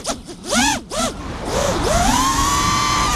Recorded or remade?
recorded